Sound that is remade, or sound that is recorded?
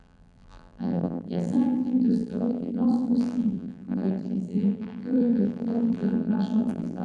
remade